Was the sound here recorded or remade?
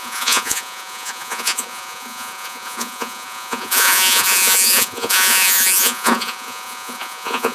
remade